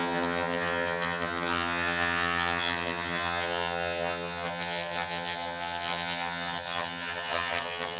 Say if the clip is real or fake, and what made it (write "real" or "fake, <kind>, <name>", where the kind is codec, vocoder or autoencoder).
fake, vocoder, HiFi-GAN